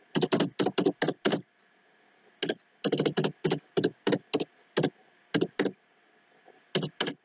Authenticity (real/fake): real